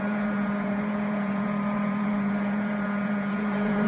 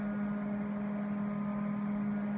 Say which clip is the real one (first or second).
second